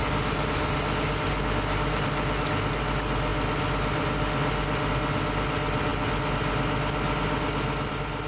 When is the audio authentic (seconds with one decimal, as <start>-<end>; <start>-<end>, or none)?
0.0-8.3